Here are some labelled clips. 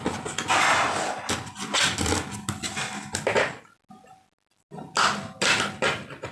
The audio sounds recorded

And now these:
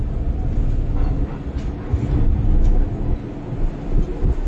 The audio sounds recorded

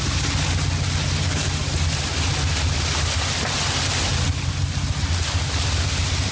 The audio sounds recorded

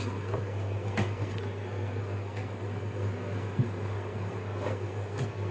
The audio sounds remade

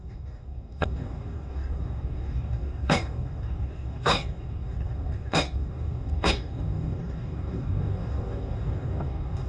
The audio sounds remade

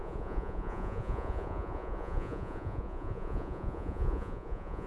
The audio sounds remade